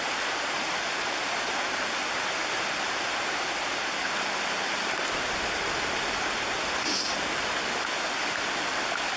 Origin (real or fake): real